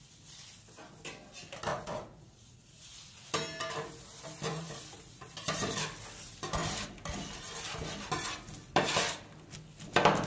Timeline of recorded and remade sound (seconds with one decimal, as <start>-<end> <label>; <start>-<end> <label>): 0.0-1.7 recorded; 1.7-3.3 remade; 3.3-4.5 recorded; 4.5-5.3 remade; 5.3-10.3 recorded